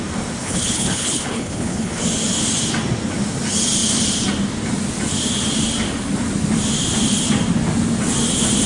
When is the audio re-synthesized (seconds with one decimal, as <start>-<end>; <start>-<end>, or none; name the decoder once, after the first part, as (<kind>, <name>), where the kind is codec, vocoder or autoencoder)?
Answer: 0.4-2.0 (codec, HILCodec)